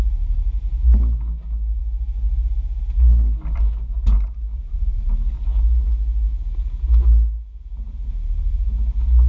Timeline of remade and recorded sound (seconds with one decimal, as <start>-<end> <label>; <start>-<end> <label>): 0.0-1.8 recorded; 1.8-2.8 remade; 2.8-4.5 recorded; 4.5-5.1 remade; 5.1-9.3 recorded